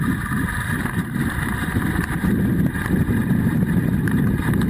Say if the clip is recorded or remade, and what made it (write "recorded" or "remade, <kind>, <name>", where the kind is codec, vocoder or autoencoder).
remade, vocoder, BigVGAN v2